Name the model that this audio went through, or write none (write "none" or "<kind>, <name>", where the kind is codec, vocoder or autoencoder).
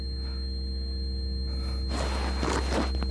none